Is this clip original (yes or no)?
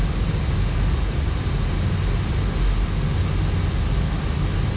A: yes